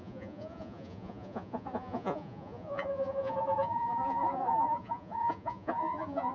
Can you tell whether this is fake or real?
fake